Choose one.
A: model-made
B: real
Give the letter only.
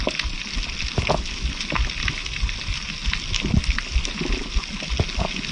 B